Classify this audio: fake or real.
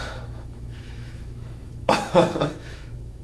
fake